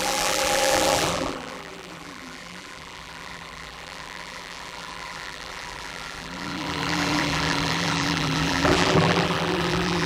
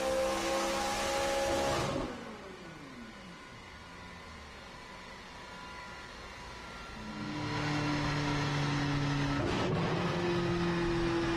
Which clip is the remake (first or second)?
first